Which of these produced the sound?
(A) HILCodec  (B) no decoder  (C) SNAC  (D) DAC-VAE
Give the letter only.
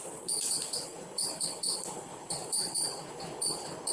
A